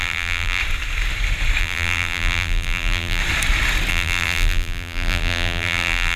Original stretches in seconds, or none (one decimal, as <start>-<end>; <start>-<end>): 0.6-1.6; 3.2-3.9